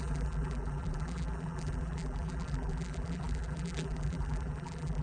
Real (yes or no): no